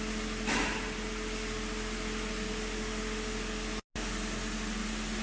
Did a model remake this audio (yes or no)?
no